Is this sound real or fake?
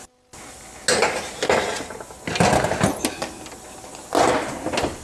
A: real